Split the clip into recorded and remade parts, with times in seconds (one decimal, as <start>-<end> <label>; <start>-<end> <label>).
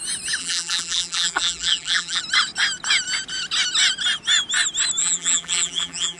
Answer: 0.0-0.4 recorded; 0.4-2.2 remade; 2.2-5.0 recorded; 5.0-6.2 remade